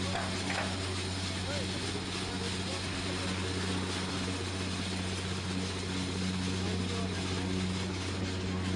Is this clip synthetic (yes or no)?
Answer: no